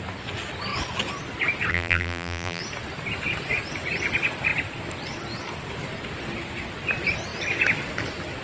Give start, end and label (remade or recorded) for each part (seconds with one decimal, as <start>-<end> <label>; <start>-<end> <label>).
0.0-1.7 recorded; 1.7-2.6 remade; 2.6-8.4 recorded